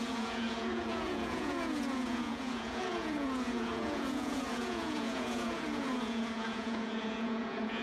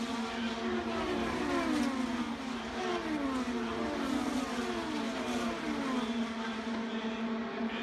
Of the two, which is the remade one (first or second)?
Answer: first